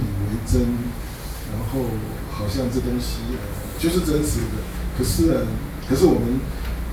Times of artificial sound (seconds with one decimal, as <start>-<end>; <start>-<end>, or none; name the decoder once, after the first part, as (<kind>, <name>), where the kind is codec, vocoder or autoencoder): 2.3-2.8 (autoencoder, DAC-VAE); 4.4-5.3

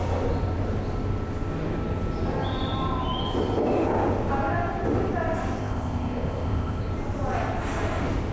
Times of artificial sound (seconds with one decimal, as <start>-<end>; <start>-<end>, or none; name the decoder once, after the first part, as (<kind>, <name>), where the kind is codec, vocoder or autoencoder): 5.6-6.9 (codec, ZipCodec)

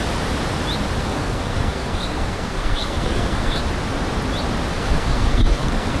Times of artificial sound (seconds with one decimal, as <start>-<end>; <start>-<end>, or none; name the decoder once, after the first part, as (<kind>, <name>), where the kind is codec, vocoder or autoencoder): 1.0-3.6 (codec, SNAC); 4.7-6.0

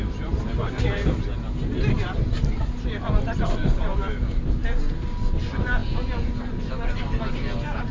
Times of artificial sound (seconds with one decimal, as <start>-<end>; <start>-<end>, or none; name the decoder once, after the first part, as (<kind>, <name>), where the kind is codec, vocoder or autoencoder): none